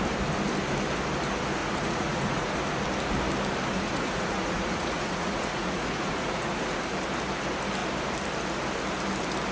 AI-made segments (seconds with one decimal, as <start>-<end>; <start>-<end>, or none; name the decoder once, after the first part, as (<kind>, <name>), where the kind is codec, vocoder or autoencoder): 1.6-2.5 (vocoder, Vocos); 3.7-6.8